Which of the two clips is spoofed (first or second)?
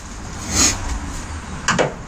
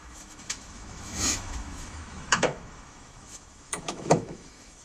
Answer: second